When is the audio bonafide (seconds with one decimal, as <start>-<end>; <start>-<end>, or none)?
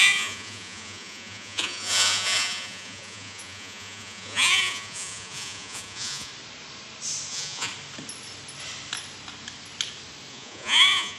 6.3-7.3; 7.7-10.3